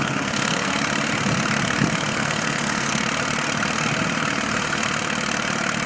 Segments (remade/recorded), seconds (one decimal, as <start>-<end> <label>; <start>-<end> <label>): 0.0-0.7 remade; 0.7-2.1 recorded; 2.1-2.9 remade; 2.9-5.9 recorded